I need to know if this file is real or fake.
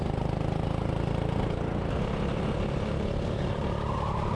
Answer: real